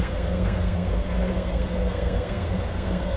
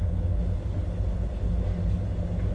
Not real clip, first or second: first